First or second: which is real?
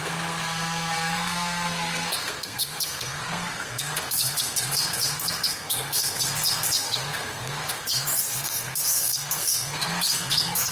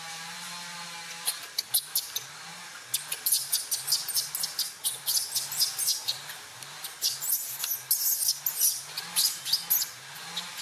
second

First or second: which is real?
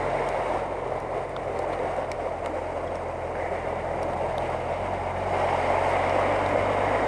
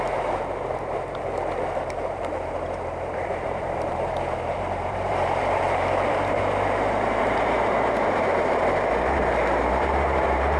first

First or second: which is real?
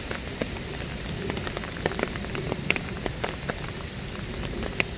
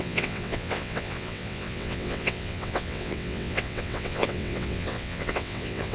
first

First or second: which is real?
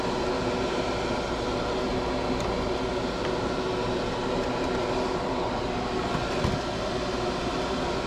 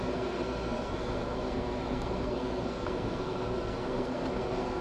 first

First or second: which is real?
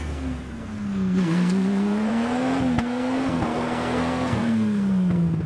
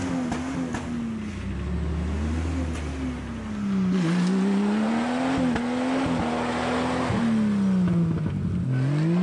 second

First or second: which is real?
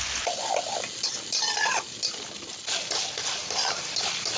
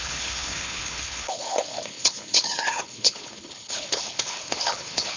first